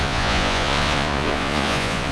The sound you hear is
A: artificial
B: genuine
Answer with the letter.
A